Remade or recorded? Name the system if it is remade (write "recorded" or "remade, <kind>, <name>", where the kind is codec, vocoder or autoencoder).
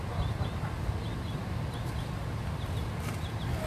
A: recorded